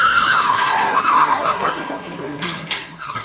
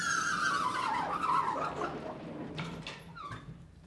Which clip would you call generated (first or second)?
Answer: first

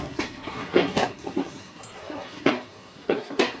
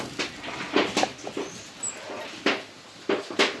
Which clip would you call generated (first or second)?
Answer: first